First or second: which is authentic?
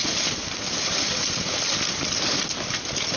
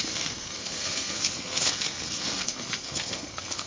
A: first